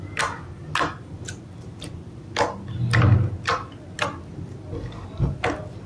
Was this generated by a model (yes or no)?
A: no